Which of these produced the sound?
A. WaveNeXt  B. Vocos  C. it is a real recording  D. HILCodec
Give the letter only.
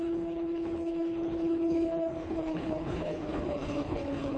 D